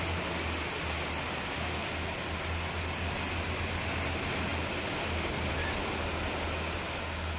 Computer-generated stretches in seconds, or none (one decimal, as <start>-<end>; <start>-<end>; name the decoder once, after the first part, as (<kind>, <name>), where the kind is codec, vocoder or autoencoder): none